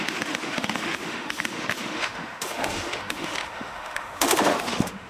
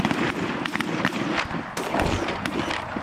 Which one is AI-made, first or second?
first